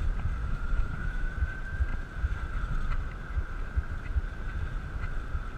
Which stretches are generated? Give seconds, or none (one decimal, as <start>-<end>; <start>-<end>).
0.4-1.3